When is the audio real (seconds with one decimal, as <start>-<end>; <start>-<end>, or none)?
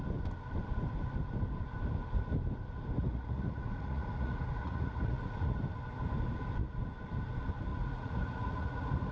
0.0-3.0; 5.6-7.7